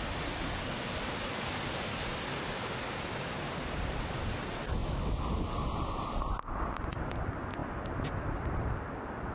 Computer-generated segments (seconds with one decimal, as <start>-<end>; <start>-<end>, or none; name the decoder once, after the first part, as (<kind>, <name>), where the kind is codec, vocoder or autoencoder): none